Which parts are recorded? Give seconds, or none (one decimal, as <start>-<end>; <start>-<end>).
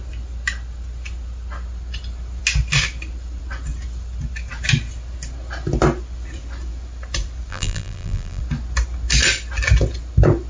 0.0-7.5; 8.4-10.5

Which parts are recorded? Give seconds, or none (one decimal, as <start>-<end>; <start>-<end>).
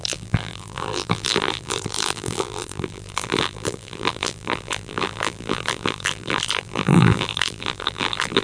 none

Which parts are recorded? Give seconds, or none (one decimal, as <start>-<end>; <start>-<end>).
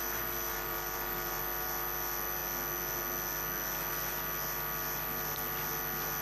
0.0-0.5; 1.4-6.2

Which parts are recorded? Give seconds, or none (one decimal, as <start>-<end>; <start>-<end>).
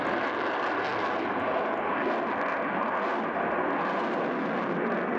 0.0-5.2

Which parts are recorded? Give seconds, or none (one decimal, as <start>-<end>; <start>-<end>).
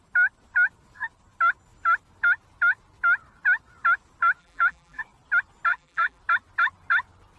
0.0-4.4; 5.0-5.7; 6.2-7.4